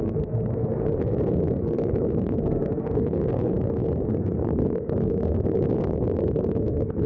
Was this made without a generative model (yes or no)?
no